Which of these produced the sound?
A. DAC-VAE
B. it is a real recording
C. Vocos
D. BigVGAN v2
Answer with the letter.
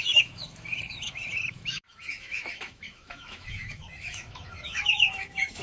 A